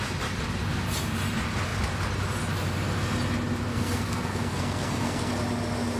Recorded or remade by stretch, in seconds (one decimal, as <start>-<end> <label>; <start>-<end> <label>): 0.0-3.7 recorded; 3.7-5.3 remade; 5.3-6.0 recorded